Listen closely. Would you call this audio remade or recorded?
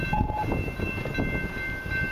recorded